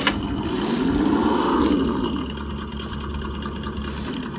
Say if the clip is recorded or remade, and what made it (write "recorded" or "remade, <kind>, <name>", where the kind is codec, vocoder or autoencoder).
recorded